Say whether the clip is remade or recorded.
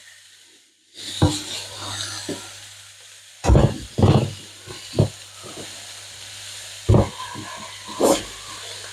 recorded